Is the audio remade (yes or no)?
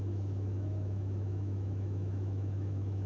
yes